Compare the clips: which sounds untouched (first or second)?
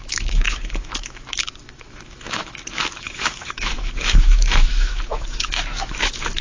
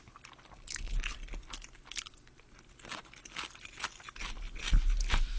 second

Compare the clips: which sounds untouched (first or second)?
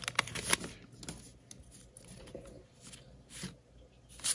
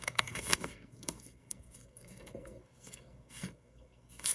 first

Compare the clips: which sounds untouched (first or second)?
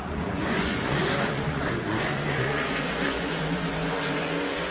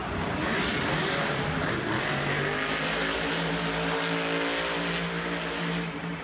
second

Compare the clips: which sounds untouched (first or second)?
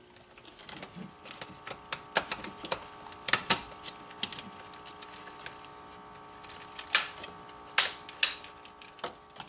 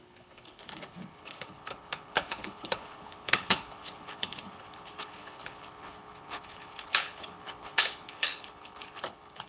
first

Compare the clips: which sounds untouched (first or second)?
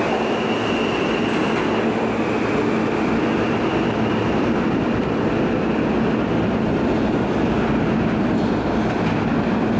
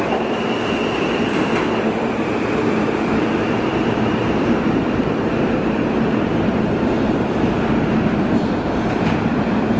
first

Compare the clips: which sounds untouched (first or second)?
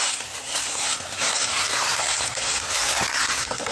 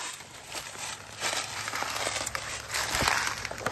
second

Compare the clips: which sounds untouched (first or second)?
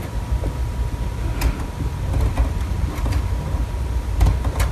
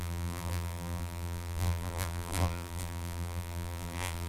first